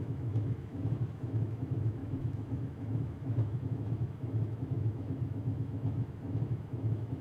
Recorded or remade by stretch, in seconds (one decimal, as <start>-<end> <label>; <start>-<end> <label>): 0.0-7.2 remade